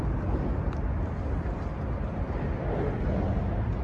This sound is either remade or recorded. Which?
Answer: recorded